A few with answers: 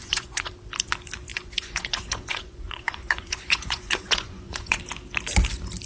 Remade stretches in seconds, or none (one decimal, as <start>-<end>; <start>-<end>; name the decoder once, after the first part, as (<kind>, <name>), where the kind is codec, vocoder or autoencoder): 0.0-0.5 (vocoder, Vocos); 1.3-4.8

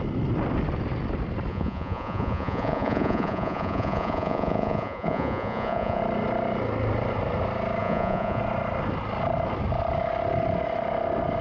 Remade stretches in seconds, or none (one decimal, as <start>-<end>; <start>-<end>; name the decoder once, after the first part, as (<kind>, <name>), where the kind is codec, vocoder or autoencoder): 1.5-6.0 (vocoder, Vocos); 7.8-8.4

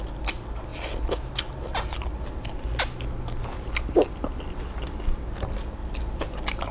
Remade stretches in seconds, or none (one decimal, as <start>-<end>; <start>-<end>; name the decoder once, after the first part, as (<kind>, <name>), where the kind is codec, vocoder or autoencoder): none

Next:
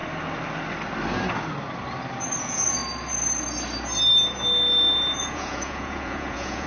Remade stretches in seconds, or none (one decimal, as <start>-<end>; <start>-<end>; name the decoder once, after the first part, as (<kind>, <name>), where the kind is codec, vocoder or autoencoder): 2.4-2.8 (vocoder, Vocos); 5.2-6.7

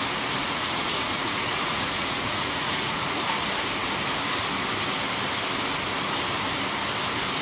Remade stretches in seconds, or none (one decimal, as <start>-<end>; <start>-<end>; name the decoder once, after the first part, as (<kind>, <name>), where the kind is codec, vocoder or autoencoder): 0.4-3.3 (vocoder, Vocos)